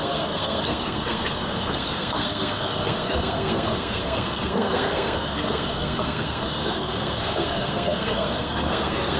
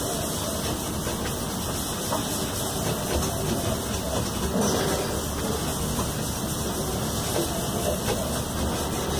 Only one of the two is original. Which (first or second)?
second